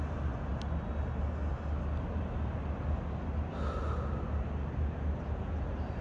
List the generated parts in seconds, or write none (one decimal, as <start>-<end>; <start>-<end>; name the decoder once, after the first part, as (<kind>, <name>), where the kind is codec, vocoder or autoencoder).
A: none